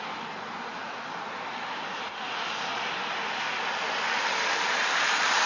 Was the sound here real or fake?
real